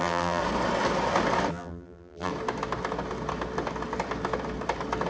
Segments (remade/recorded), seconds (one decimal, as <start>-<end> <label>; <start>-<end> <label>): 0.0-0.4 remade; 0.4-1.5 recorded; 1.5-2.3 remade; 2.3-5.1 recorded